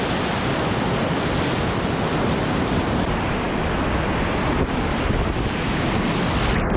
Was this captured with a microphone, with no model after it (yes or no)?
yes